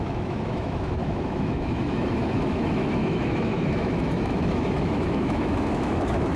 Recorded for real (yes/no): no